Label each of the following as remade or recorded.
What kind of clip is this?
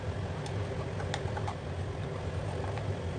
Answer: recorded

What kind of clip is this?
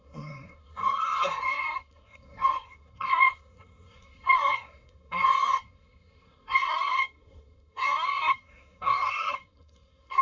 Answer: remade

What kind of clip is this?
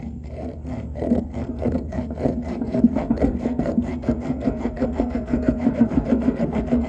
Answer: remade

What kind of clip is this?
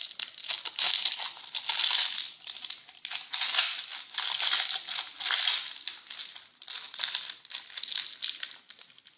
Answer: recorded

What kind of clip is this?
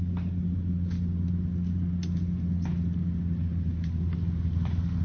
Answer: recorded